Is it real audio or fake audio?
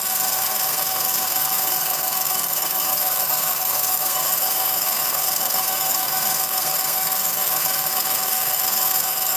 fake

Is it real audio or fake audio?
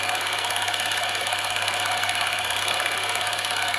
fake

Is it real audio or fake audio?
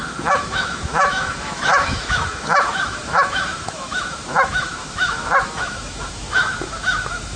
fake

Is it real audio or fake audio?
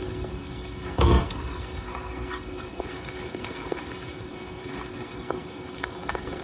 fake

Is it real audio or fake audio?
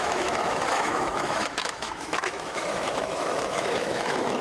fake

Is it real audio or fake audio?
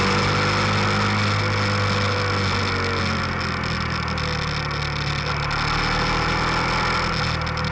real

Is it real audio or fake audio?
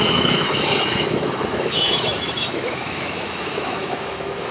fake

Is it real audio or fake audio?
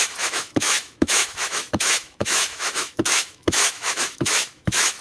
fake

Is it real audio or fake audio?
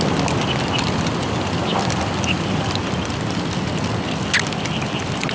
real